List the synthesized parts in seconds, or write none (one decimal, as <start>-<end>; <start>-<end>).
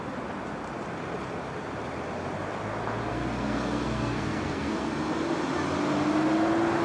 3.1-4.9